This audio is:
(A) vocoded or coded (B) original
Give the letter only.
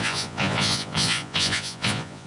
A